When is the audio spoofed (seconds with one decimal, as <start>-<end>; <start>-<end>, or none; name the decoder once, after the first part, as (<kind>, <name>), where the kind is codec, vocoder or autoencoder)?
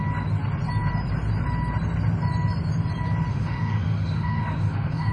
3.3-5.1 (autoencoder, DAC-VAE)